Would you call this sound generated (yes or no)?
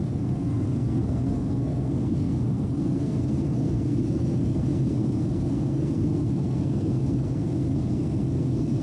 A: yes